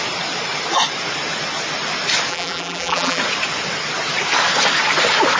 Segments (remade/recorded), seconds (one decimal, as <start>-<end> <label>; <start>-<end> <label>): 0.0-2.3 recorded; 2.3-3.2 remade; 3.2-5.4 recorded